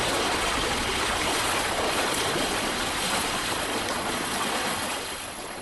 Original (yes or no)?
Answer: no